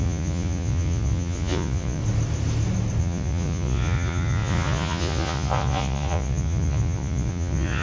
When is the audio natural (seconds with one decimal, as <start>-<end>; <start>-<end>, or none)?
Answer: 2.0-3.0